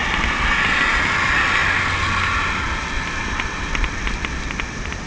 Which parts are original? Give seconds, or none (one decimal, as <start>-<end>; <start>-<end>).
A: 0.0-5.1